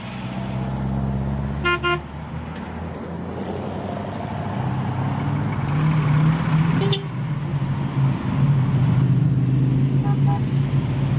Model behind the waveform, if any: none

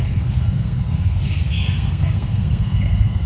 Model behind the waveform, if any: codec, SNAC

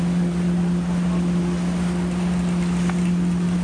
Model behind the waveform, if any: none